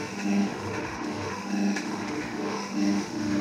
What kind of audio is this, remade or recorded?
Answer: remade